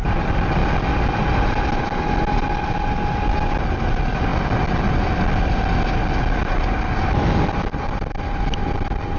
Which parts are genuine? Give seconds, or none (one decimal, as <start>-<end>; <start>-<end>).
0.0-9.2